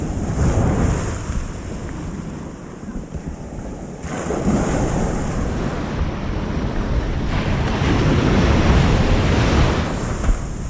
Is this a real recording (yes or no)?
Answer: yes